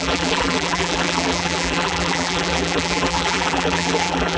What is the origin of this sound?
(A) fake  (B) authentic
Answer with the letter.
A